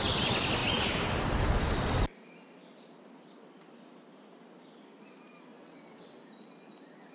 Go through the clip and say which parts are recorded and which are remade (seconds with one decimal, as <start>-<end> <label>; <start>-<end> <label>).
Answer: 0.0-5.6 recorded; 5.6-6.2 remade; 6.2-7.1 recorded

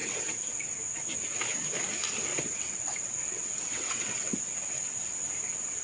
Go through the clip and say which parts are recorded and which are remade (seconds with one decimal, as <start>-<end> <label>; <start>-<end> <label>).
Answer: 0.0-0.7 remade; 0.7-2.3 recorded; 2.3-4.4 remade; 4.4-5.8 recorded

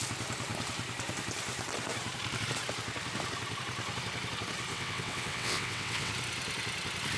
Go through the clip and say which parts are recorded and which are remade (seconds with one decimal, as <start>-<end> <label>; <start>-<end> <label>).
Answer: 0.0-4.7 recorded; 4.7-6.1 remade; 6.1-7.2 recorded